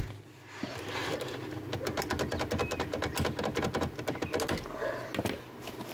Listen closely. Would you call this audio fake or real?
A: real